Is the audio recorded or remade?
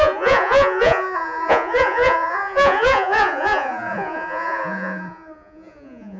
remade